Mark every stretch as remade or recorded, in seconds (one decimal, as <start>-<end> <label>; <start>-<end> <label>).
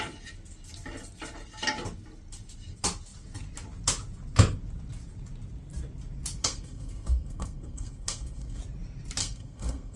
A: 0.0-6.4 recorded; 6.4-8.6 remade; 8.6-9.2 recorded; 9.2-10.0 remade